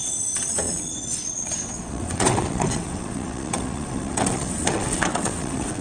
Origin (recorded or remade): remade